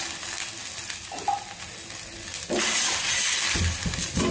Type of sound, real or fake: real